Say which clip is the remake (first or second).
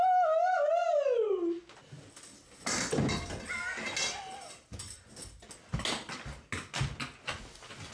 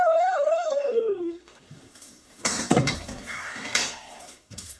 second